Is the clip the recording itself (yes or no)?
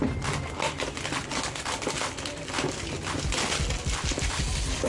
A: yes